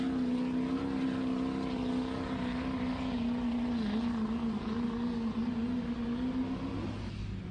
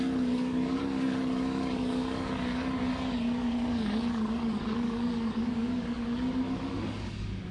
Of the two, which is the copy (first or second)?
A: second